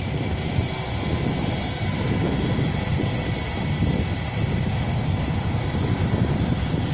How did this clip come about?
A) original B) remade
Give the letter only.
A